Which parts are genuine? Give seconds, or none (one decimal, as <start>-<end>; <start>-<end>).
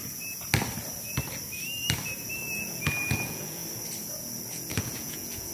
0.0-2.6; 3.6-4.5